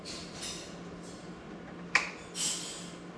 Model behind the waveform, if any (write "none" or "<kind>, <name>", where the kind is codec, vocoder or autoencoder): none